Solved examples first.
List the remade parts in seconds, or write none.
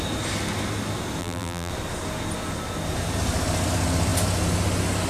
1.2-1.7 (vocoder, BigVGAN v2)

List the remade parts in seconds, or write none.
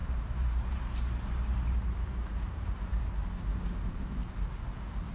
0.0-3.0 (vocoder, BigVGAN v2)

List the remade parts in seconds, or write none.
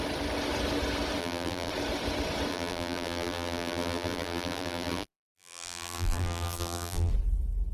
1.2-1.7 (vocoder, BigVGAN v2); 2.5-7.1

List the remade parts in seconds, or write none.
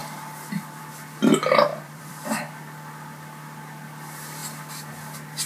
1.7-2.5 (vocoder, BigVGAN v2)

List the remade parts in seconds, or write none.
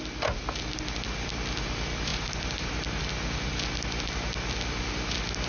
2.1-3.0 (vocoder, BigVGAN v2)